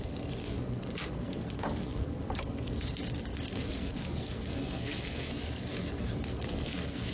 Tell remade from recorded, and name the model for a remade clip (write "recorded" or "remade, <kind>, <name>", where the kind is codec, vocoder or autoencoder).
remade, codec, SNAC